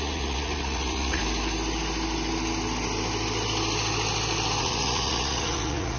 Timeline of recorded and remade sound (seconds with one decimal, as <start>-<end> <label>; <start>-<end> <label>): 0.0-1.2 remade; 1.2-4.6 recorded; 4.6-6.0 remade